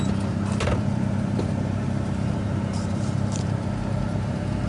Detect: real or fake fake